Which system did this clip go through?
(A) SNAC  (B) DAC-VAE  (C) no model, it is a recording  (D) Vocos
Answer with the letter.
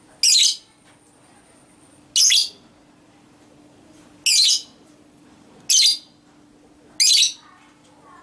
C